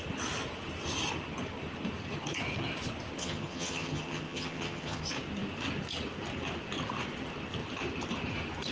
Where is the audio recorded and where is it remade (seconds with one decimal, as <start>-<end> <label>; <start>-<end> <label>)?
0.0-3.2 recorded; 3.2-5.0 remade; 5.0-8.7 recorded